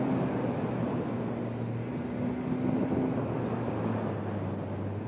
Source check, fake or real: real